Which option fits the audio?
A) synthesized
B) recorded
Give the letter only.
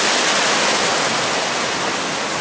B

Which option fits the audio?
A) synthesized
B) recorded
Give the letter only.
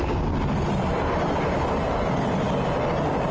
B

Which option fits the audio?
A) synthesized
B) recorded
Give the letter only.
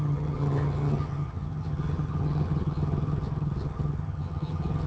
A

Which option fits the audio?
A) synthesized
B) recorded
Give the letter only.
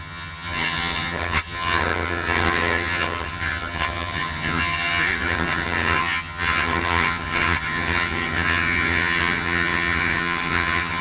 A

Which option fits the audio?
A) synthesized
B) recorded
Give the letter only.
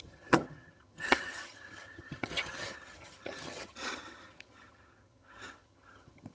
A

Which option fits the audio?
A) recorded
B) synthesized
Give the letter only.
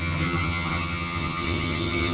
B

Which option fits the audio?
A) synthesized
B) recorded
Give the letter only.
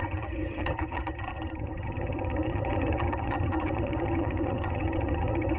A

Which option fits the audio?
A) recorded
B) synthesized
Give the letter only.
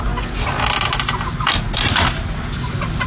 A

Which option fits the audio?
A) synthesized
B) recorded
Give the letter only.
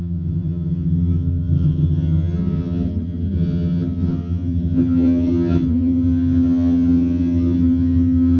A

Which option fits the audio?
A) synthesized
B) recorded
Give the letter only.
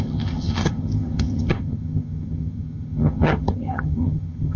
A